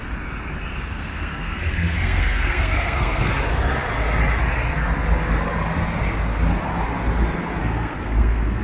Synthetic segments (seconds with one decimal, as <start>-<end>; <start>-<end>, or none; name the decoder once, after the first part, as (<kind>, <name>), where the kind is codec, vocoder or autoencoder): 0.7-3.3 (codec, SNAC); 7.6-8.6

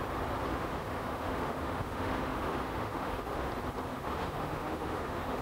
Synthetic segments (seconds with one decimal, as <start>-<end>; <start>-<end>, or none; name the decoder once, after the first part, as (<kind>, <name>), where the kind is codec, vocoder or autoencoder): 0.5-3.5 (autoencoder, DAC-VAE); 3.9-5.4

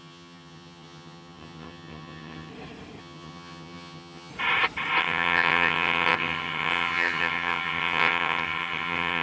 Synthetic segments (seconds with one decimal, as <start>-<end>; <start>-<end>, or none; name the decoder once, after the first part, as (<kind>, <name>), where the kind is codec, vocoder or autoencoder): 0.0-2.5 (vocoder, HiFi-GAN); 3.0-4.3; 5.0-9.2